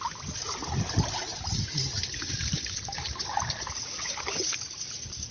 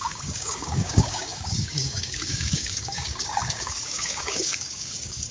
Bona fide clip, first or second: first